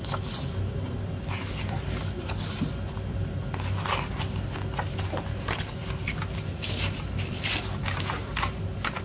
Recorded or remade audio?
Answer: recorded